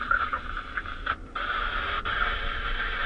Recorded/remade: remade